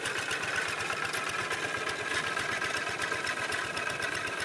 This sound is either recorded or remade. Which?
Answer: recorded